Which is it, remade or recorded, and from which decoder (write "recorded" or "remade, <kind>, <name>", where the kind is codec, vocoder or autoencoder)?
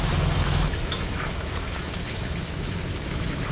remade, autoencoder, DAC-VAE